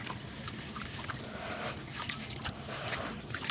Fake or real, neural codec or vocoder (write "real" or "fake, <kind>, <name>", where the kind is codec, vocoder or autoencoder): real